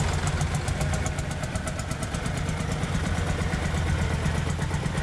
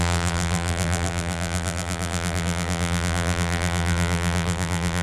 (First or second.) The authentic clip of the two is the first